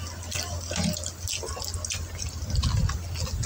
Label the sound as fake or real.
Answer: real